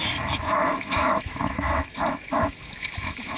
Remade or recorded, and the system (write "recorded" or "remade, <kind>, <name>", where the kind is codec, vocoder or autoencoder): remade, autoencoder, DAC-VAE